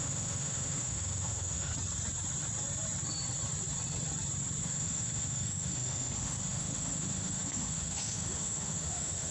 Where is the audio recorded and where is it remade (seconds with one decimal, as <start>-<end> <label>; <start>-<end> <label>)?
0.0-1.7 remade; 1.7-4.6 recorded; 4.6-9.3 remade